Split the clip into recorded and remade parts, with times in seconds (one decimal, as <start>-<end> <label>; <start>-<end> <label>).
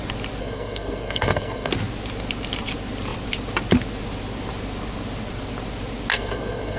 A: 0.0-0.4 recorded; 0.4-1.7 remade; 1.7-6.1 recorded; 6.1-6.8 remade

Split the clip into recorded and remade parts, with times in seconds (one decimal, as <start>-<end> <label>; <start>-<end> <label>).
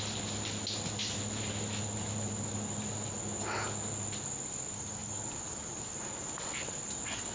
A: 0.0-7.3 recorded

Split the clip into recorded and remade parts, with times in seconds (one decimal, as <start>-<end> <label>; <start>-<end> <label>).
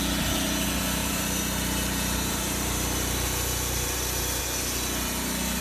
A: 0.0-1.0 recorded; 1.0-4.4 remade; 4.4-5.6 recorded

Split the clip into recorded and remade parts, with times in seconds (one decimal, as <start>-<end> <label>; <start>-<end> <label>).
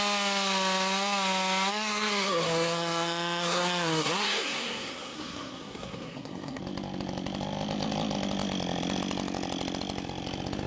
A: 0.0-1.7 recorded; 1.7-6.6 remade; 6.6-10.7 recorded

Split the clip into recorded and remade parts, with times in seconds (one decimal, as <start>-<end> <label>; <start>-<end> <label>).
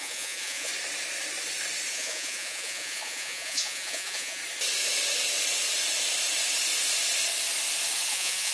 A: 0.0-0.7 remade; 0.7-1.9 recorded; 1.9-4.4 remade; 4.4-8.1 recorded; 8.1-8.5 remade